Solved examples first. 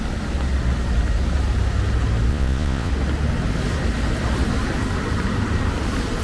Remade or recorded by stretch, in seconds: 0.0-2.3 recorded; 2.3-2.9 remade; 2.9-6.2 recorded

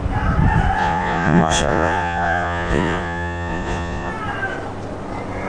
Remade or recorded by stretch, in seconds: 0.0-0.8 recorded; 0.8-4.1 remade; 4.1-5.5 recorded

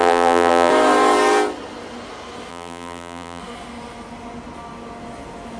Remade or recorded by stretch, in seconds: 0.0-0.7 remade; 0.7-2.5 recorded; 2.5-3.4 remade; 3.4-5.6 recorded

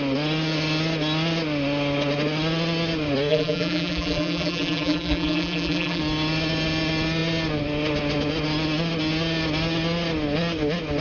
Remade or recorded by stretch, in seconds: 0.0-3.3 recorded; 3.3-6.0 remade; 6.0-11.0 recorded

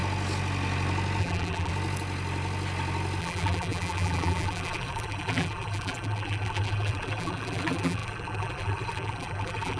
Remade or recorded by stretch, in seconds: 0.0-1.2 recorded; 1.2-1.7 remade; 1.7-3.2 recorded; 3.2-9.8 remade

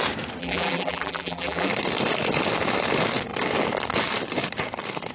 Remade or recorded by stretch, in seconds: 0.0-0.4 recorded; 0.4-1.7 remade; 1.7-5.1 recorded

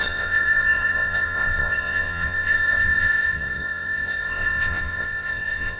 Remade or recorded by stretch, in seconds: 0.0-5.8 remade